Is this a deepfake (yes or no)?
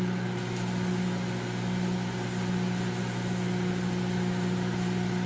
no